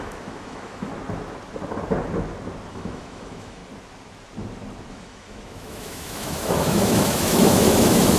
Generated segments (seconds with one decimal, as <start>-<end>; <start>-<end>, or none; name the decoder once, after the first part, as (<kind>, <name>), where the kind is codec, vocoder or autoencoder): 0.0-0.9 (autoencoder, DAC-VAE); 2.7-3.6; 4.9-8.2